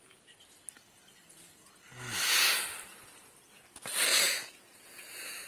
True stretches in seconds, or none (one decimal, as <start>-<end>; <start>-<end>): 0.0-4.1

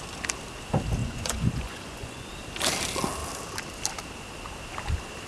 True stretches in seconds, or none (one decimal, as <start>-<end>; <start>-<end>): 0.0-1.0; 2.3-5.3